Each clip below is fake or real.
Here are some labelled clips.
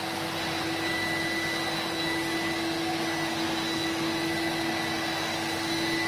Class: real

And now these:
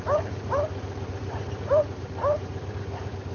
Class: real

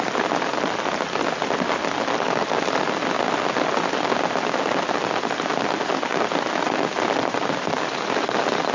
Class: real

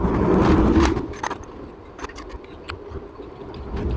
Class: real